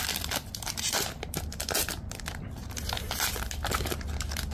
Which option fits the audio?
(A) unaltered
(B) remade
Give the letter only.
B